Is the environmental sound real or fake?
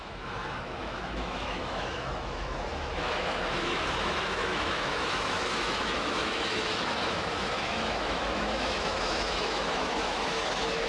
fake